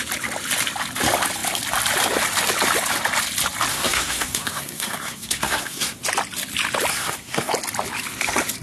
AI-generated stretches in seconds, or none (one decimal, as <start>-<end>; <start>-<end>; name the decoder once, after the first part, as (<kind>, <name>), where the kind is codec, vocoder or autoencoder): 3.7-6.0 (codec, SNAC); 6.9-7.5